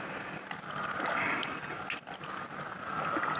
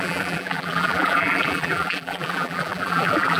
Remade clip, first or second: second